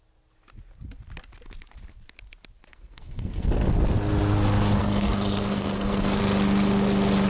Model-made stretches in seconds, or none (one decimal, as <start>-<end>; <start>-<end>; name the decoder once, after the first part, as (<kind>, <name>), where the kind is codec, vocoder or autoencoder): 2.7-3.5 (codec, SNAC); 4.8-6.2